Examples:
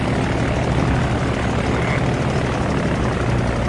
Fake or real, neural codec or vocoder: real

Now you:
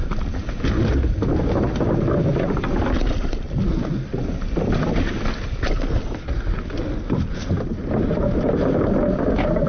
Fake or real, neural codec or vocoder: real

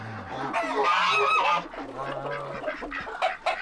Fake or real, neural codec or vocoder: real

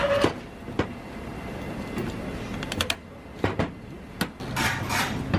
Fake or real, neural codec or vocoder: real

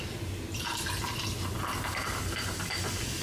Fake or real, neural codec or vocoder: real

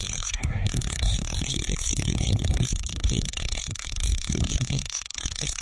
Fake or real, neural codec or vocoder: fake, codec, SNAC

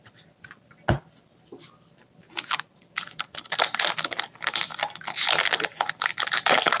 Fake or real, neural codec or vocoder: real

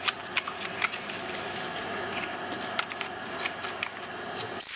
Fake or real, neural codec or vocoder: real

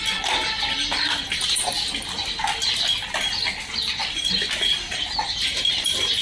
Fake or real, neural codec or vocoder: real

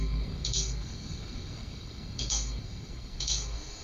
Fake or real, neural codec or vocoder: fake, codec, SNAC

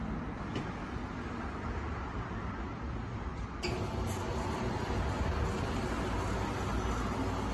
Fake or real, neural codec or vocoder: real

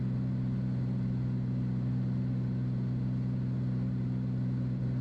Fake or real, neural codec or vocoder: real